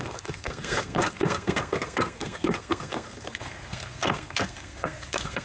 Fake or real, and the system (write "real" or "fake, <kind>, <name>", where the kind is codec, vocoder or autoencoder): fake, codec, SNAC